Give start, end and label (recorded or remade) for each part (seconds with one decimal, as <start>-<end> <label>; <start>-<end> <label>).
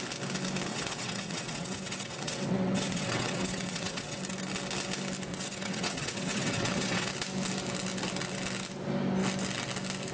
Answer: 0.0-0.7 recorded; 0.7-4.2 remade; 4.2-5.3 recorded; 5.3-7.1 remade; 7.1-10.1 recorded